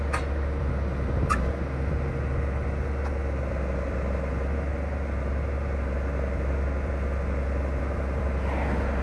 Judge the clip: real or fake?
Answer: real